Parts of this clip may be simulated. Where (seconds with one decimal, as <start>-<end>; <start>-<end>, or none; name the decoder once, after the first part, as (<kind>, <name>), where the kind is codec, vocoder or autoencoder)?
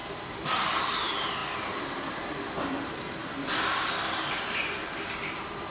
0.0-5.7 (vocoder, BigVGAN v2)